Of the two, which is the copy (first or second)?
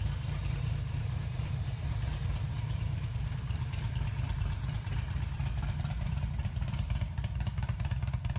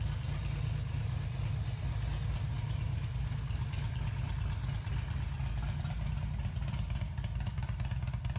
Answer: first